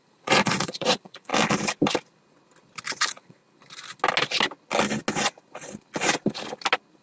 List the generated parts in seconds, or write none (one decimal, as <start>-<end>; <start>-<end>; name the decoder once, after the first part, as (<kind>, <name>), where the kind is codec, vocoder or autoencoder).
0.0-1.3 (vocoder, Vocos); 2.9-3.4